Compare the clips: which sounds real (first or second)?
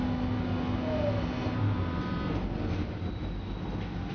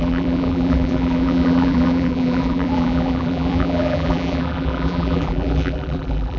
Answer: first